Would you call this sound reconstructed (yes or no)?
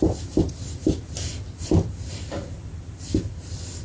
yes